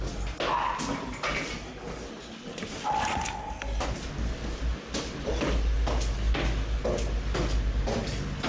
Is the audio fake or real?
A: real